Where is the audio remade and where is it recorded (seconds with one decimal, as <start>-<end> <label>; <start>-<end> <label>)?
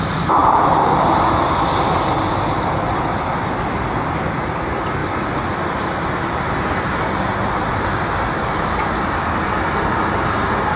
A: 0.0-0.4 recorded; 0.4-3.4 remade; 3.4-5.0 recorded; 5.0-6.3 remade; 6.3-10.8 recorded